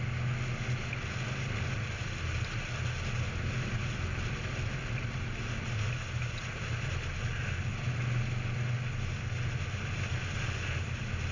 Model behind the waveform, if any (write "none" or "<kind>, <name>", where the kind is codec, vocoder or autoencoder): none